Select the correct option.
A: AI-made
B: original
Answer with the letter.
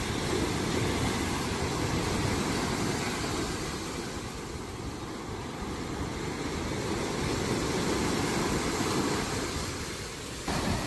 B